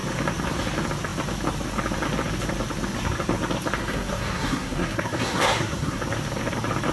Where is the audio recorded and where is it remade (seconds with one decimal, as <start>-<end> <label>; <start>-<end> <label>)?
0.0-3.8 recorded; 3.8-6.0 remade; 6.0-6.9 recorded